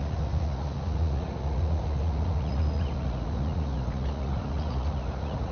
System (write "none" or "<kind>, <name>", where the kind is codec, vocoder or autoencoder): vocoder, Vocos